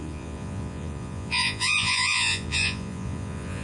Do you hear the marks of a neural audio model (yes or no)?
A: yes